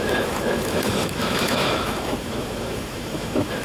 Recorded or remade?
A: remade